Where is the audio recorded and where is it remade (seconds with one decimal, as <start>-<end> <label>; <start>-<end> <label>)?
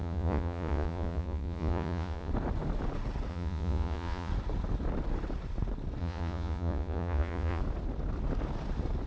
0.0-2.3 remade; 2.3-3.3 recorded; 3.3-4.3 remade; 4.3-6.0 recorded; 6.0-7.6 remade; 7.6-9.1 recorded